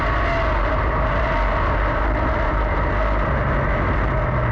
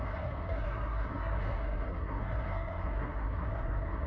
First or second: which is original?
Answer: first